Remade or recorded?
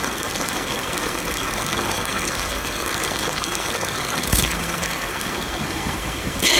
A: remade